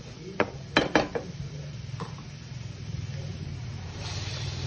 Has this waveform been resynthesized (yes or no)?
yes